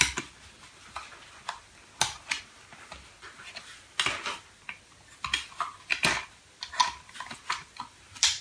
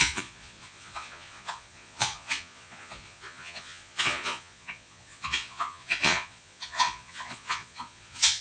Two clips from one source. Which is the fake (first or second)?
second